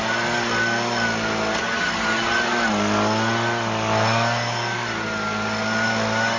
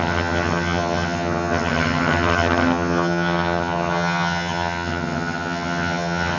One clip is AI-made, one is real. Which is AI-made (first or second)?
second